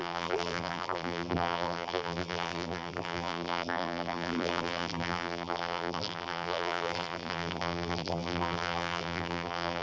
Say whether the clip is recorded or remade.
remade